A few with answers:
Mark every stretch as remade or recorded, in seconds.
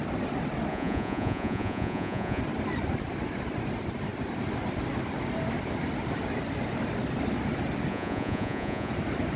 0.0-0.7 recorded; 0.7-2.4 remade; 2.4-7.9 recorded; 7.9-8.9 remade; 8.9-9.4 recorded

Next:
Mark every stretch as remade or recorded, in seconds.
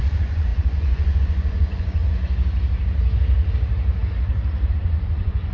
0.0-2.0 remade; 2.0-4.7 recorded; 4.7-5.5 remade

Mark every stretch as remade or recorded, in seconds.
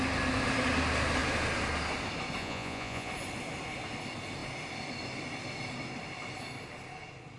0.0-2.4 recorded; 2.4-3.1 remade; 3.1-7.4 recorded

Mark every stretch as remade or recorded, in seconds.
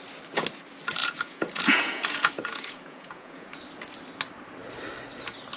0.0-1.0 recorded; 1.0-3.6 remade; 3.6-5.6 recorded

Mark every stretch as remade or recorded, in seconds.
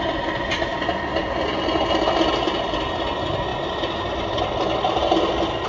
0.0-5.7 recorded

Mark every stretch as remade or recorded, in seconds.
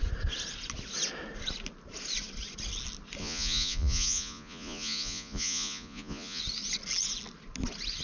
0.0-3.2 recorded; 3.2-6.4 remade; 6.4-8.0 recorded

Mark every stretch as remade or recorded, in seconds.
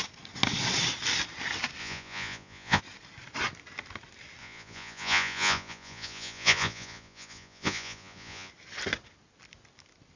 0.0-1.8 recorded; 1.8-2.8 remade; 2.8-4.4 recorded; 4.4-8.5 remade; 8.5-10.2 recorded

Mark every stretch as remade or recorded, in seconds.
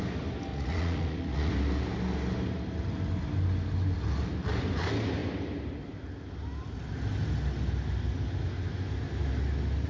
0.0-0.5 recorded; 0.5-1.5 remade; 1.5-9.9 recorded